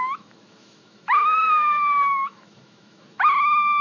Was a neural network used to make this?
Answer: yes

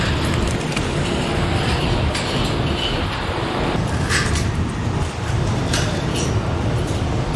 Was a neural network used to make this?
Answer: yes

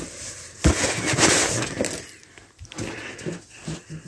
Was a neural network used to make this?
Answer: no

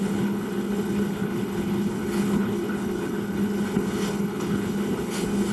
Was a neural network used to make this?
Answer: yes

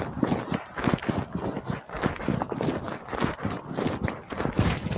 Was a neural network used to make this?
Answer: no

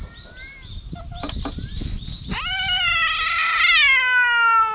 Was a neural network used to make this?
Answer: no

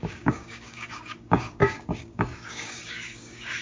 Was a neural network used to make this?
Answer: yes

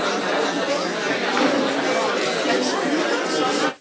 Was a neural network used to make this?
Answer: no